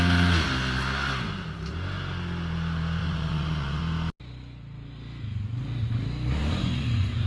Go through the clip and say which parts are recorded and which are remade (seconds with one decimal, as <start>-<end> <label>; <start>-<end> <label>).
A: 0.0-3.0 recorded; 3.0-3.8 remade; 3.8-6.4 recorded; 6.4-7.3 remade